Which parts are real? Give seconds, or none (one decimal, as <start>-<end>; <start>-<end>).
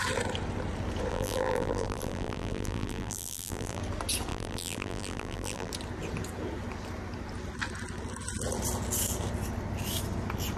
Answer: 0.0-1.1; 3.8-4.3; 5.7-10.6